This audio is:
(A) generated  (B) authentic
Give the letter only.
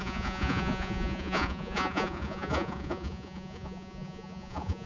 A